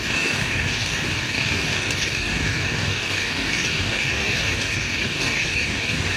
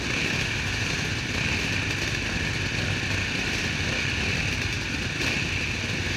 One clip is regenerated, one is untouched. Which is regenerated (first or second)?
first